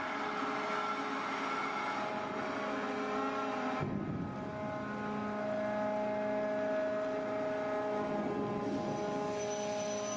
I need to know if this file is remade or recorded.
recorded